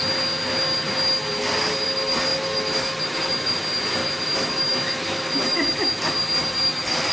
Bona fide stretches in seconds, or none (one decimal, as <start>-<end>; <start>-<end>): 0.0-2.3; 3.6-4.0; 6.0-7.1

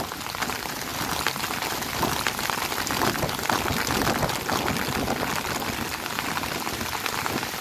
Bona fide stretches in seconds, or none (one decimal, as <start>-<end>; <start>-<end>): 0.0-7.6

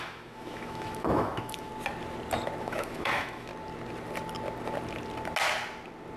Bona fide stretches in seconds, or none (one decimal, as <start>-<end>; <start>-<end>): 1.7-2.6; 3.5-6.2